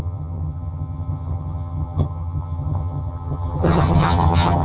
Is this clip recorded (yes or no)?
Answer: no